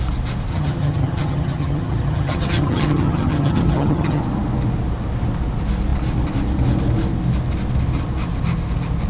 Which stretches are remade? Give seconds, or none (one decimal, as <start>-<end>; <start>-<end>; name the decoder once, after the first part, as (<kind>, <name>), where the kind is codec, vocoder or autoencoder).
0.5-4.2 (vocoder, HiFi-GAN)

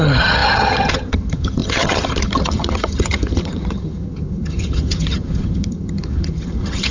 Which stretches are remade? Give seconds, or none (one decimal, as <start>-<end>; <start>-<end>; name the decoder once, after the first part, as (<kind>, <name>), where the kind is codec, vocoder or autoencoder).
0.0-6.9 (vocoder, HiFi-GAN)

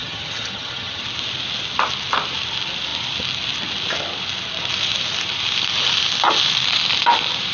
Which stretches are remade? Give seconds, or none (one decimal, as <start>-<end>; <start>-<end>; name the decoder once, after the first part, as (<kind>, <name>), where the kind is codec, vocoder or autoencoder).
0.0-1.0 (vocoder, HiFi-GAN)

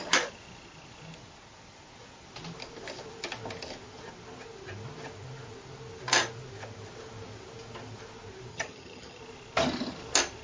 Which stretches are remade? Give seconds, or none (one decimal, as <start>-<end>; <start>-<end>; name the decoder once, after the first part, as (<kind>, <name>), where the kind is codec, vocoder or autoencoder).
8.5-9.2 (vocoder, HiFi-GAN)

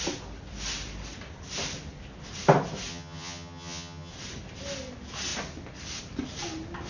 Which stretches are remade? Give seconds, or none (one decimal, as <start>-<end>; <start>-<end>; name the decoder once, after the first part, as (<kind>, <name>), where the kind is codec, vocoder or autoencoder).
2.9-4.1 (vocoder, HiFi-GAN)

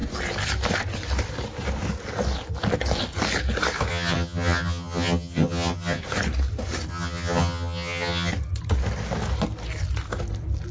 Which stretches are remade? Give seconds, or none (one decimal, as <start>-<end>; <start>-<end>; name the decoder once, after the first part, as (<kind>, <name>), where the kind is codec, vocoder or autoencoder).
3.9-6.0 (vocoder, HiFi-GAN); 6.9-8.3

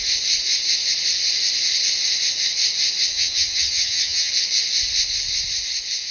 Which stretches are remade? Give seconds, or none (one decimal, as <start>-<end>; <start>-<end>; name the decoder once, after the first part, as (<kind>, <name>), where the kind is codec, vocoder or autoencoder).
3.1-4.3 (vocoder, HiFi-GAN)